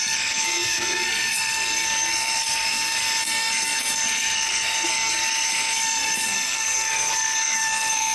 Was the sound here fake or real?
fake